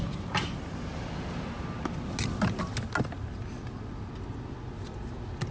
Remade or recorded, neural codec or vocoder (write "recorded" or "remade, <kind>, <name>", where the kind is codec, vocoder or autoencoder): recorded